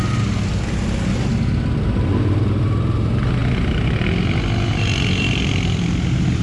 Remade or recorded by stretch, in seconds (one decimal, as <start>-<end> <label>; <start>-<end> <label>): 0.0-6.4 recorded